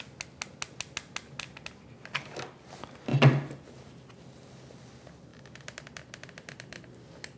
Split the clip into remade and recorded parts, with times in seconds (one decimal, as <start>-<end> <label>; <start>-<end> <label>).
0.0-3.1 recorded; 3.1-3.7 remade; 3.7-5.3 recorded; 5.3-6.9 remade; 6.9-7.4 recorded